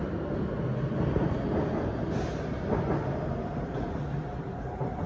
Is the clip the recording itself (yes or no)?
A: yes